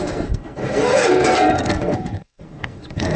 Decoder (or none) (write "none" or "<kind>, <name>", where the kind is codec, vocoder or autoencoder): codec, SNAC